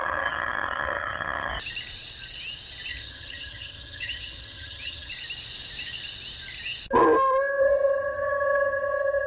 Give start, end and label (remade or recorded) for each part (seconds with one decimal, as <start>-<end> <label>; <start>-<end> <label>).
0.0-1.5 remade; 1.5-2.9 recorded; 2.9-5.1 remade; 5.1-7.6 recorded; 7.6-9.3 remade